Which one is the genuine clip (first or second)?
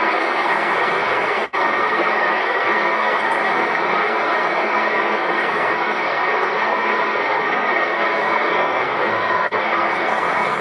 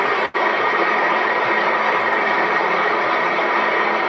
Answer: second